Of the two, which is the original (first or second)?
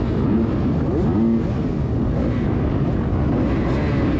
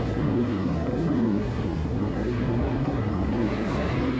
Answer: first